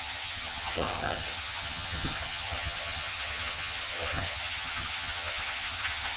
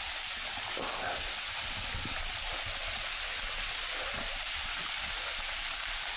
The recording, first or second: second